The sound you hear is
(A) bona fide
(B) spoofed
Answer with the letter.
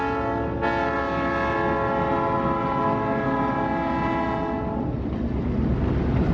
A